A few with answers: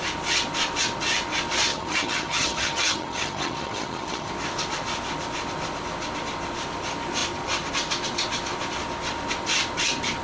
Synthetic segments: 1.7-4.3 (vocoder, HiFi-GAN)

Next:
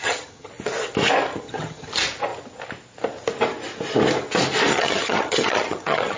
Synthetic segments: 0.0-0.5 (vocoder, HiFi-GAN); 1.3-1.9; 4.7-6.2

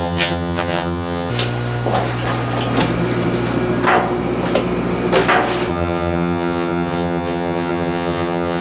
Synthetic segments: 0.0-1.3 (vocoder, HiFi-GAN); 5.7-8.6

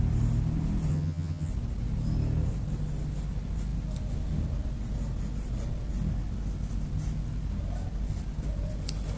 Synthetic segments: 0.9-1.5 (vocoder, HiFi-GAN)

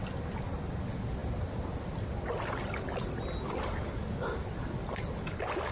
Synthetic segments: none

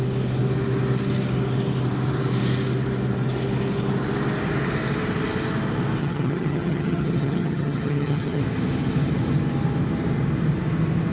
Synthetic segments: 6.0-8.4 (vocoder, HiFi-GAN)